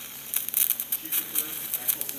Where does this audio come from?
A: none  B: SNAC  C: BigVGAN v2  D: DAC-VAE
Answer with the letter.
A